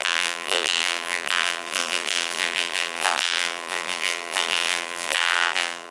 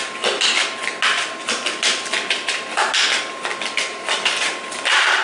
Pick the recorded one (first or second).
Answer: second